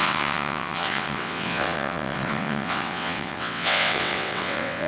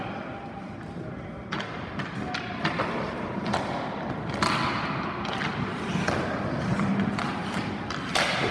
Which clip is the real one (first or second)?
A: second